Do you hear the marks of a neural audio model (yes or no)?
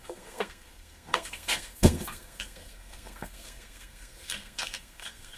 yes